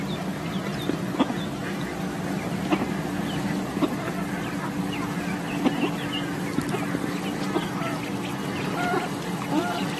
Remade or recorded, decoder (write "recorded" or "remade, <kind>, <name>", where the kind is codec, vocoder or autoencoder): recorded